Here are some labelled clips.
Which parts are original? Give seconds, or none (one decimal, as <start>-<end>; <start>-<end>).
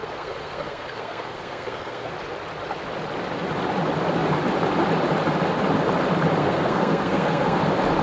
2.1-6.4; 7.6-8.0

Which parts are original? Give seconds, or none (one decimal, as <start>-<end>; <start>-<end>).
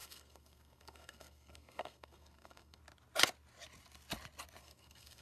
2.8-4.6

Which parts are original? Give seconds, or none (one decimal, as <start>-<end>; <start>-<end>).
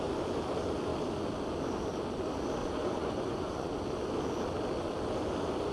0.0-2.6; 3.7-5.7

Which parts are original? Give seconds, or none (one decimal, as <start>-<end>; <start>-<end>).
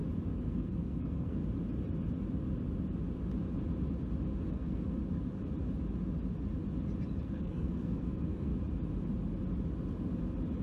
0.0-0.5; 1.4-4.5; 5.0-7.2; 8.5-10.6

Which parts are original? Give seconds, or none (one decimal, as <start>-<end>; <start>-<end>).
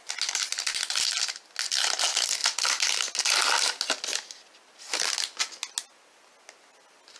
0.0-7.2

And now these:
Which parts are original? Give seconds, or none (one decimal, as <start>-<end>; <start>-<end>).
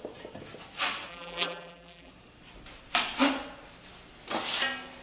0.0-1.1; 2.1-5.0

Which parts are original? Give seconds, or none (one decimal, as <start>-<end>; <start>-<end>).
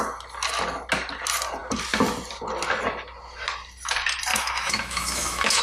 0.0-4.3